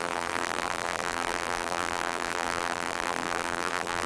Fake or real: fake